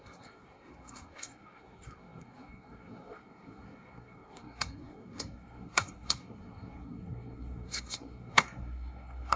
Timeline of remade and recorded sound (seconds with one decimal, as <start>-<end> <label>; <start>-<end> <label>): 0.0-9.4 remade